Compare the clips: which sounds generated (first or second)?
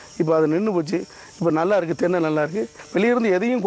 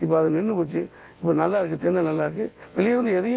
second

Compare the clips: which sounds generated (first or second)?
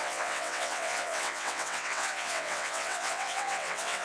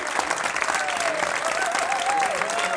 first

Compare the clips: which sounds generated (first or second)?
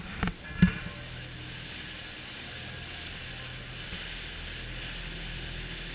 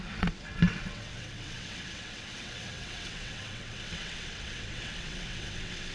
second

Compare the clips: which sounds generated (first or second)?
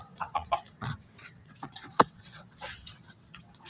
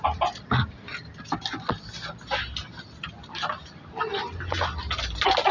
first